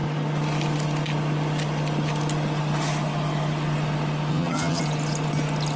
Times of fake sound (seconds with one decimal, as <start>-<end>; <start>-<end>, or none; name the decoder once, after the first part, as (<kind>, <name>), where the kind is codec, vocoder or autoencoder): 4.3-4.8 (vocoder, HiFi-GAN)